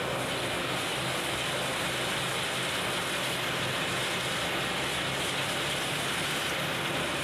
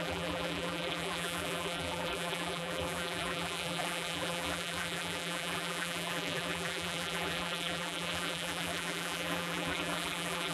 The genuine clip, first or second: first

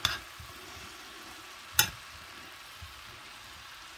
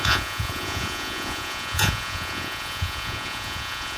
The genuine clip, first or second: first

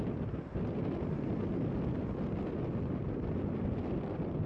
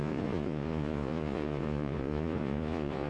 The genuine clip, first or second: first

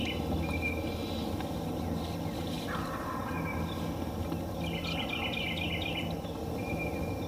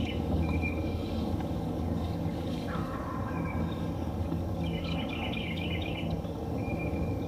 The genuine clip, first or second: first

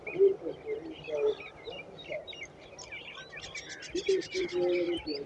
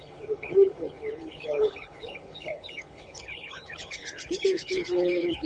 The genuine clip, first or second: first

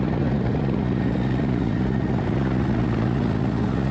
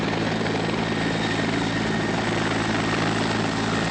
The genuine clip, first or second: second